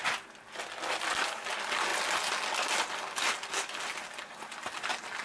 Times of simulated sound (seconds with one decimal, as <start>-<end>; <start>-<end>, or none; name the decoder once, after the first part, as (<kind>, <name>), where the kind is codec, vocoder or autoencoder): none